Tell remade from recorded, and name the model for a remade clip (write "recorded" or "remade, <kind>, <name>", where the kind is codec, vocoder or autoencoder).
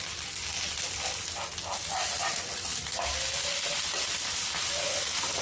recorded